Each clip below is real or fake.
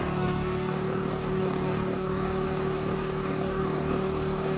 fake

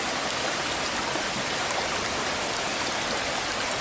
real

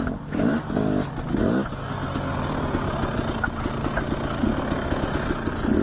real